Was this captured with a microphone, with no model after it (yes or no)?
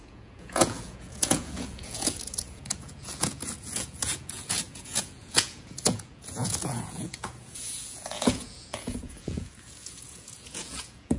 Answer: no